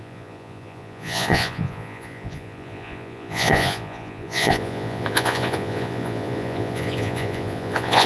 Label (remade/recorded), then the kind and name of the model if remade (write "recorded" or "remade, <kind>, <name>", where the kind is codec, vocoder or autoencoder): remade, vocoder, Vocos